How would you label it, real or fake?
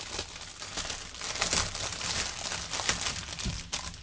real